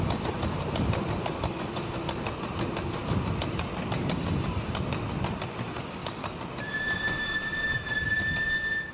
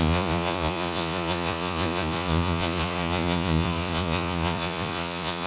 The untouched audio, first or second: first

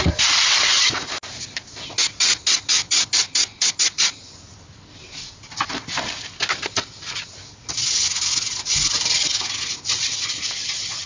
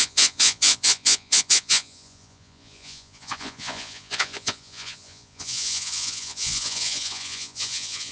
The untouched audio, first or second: first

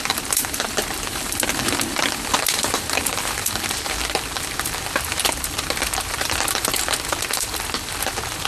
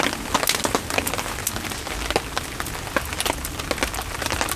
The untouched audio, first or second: second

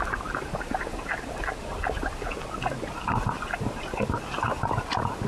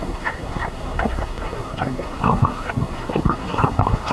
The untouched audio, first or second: first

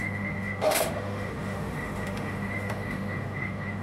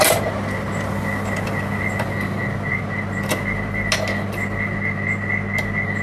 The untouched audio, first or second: second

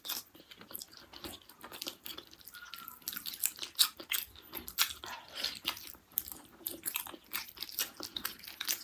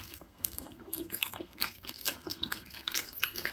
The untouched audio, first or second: first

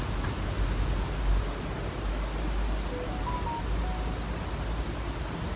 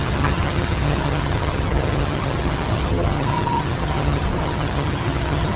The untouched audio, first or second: first